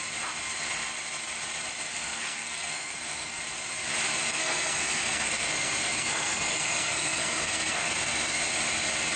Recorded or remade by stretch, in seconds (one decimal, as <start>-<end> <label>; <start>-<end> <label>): 0.0-1.9 recorded; 1.9-3.4 remade; 3.4-4.3 recorded; 4.3-8.5 remade; 8.5-9.2 recorded